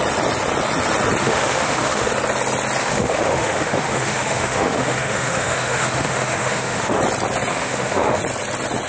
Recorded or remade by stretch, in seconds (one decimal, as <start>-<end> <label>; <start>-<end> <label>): 0.0-1.2 recorded; 1.2-2.1 remade; 2.1-2.8 recorded; 2.8-7.0 remade; 7.0-7.5 recorded; 7.5-8.2 remade; 8.2-8.9 recorded